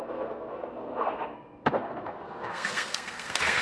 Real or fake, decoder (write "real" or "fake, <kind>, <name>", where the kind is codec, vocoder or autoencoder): fake, codec, SNAC